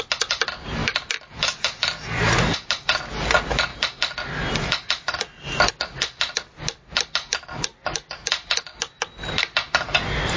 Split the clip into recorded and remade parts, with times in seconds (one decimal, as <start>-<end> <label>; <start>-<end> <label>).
0.0-10.4 recorded